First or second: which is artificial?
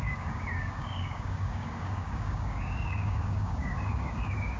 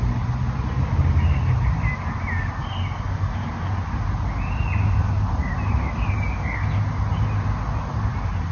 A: first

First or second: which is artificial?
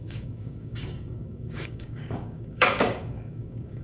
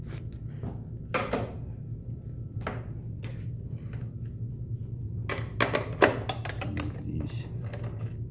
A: first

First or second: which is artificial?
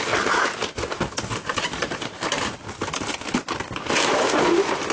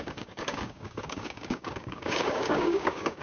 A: second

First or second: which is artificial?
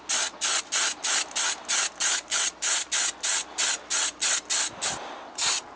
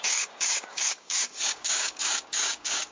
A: second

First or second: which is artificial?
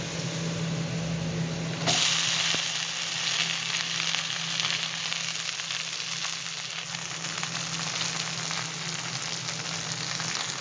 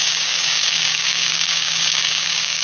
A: second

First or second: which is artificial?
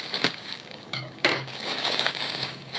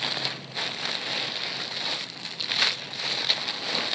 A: first